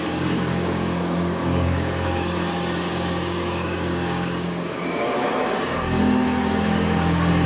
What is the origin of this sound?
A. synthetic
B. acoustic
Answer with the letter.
A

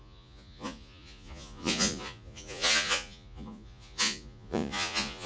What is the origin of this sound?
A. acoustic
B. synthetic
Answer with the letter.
B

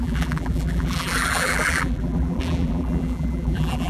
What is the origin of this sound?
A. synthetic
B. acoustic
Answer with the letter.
A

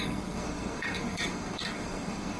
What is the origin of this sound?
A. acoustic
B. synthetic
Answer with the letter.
B